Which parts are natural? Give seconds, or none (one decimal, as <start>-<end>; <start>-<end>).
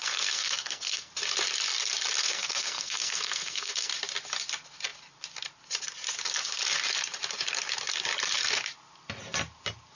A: 1.1-2.2; 3.9-9.9